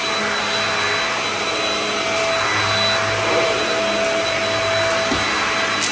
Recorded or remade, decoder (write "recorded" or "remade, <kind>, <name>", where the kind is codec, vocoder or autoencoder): recorded